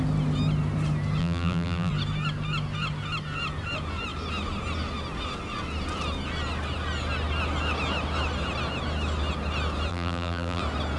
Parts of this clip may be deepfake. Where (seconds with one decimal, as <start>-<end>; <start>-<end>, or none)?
1.2-1.9; 9.9-10.6